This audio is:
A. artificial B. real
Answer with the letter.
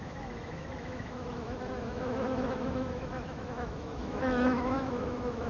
A